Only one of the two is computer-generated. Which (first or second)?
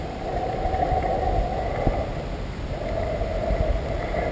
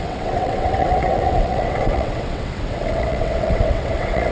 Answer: second